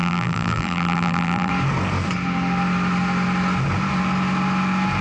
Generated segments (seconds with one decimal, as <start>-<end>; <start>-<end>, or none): 0.0-1.5